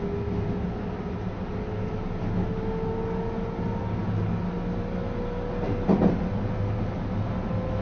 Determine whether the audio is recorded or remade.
recorded